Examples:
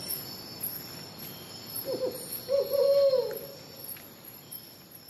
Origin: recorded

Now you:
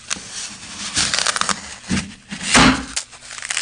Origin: recorded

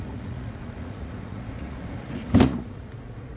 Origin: remade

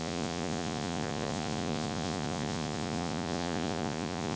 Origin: remade